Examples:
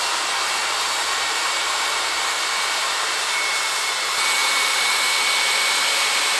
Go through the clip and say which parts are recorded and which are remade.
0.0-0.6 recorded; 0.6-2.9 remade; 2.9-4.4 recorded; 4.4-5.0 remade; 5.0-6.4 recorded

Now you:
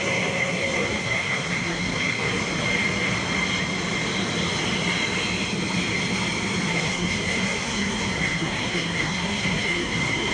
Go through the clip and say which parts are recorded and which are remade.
0.0-2.4 remade; 2.4-6.7 recorded; 6.7-10.3 remade

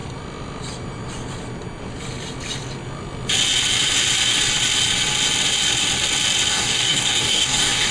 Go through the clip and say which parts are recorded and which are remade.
0.0-6.5 recorded; 6.5-7.9 remade

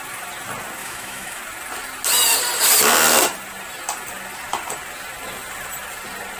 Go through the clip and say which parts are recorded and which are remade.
0.0-0.8 recorded; 0.8-1.4 remade; 1.4-6.4 recorded

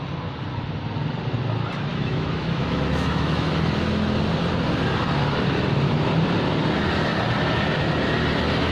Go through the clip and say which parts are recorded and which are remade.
0.0-1.9 recorded; 1.9-3.5 remade; 3.5-8.7 recorded

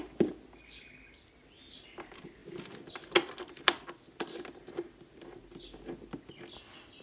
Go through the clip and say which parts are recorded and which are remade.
0.0-7.0 recorded

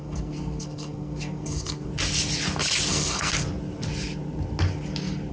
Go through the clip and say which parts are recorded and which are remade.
0.0-1.9 remade; 1.9-2.9 recorded; 2.9-3.3 remade; 3.3-5.3 recorded

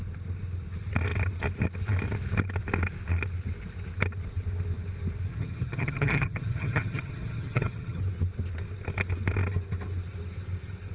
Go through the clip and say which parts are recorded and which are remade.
0.0-5.3 recorded; 5.3-8.0 remade; 8.0-10.9 recorded